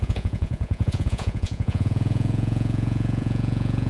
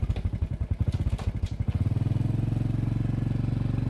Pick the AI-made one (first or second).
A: first